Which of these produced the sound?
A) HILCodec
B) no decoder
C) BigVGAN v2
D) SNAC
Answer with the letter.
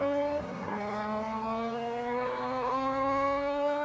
D